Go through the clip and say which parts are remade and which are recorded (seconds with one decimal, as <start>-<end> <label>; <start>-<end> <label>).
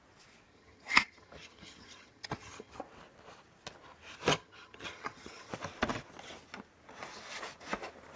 0.0-0.5 recorded; 0.5-2.8 remade; 2.8-4.3 recorded; 4.3-5.5 remade; 5.5-8.2 recorded